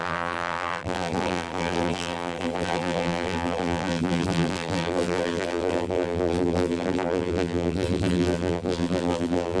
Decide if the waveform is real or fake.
fake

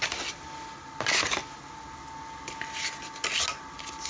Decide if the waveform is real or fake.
real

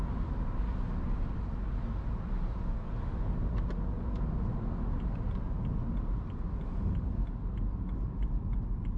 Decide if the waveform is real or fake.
real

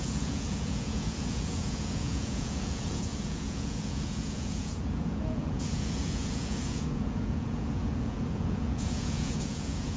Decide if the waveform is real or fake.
fake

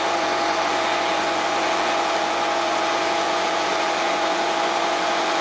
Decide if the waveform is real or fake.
fake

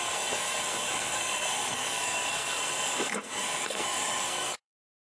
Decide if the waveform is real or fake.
fake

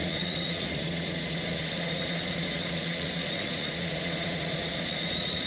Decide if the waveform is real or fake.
fake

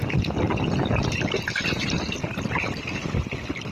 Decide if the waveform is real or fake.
real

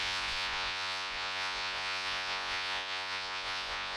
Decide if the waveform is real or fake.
fake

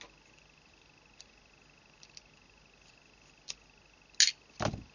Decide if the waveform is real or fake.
real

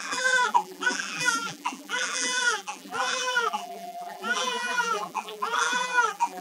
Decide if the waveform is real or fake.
fake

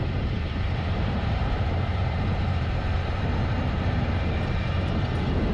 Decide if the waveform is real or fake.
fake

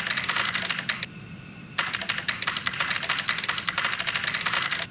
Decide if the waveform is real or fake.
real